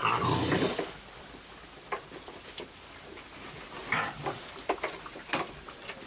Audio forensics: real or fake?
real